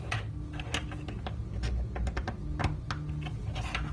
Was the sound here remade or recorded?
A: recorded